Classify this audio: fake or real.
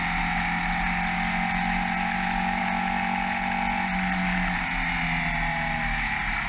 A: real